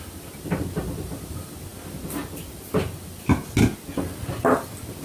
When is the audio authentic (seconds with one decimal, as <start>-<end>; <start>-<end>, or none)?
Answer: 0.0-5.0